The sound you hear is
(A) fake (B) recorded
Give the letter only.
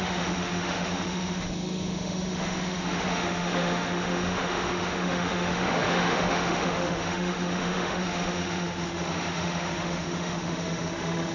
A